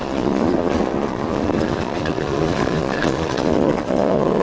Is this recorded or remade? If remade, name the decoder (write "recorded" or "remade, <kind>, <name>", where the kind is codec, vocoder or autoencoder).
remade, vocoder, Vocos